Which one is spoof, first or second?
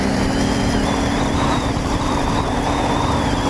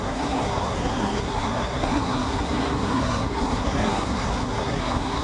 second